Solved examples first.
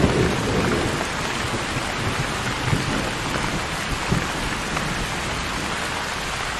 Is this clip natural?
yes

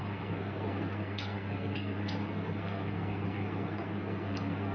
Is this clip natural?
no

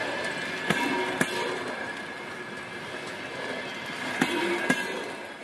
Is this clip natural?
yes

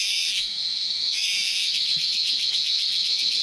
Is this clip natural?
no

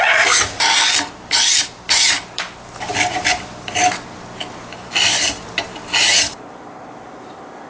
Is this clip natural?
yes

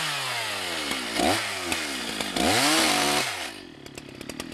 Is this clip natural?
yes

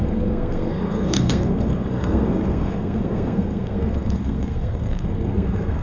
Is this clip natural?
no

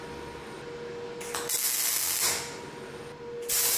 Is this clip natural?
yes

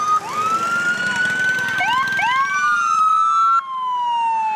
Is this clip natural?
yes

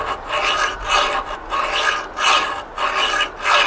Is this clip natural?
yes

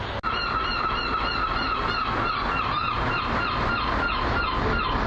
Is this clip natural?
yes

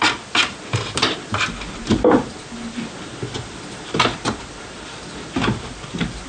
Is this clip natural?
yes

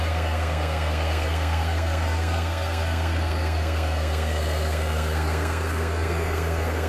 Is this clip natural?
no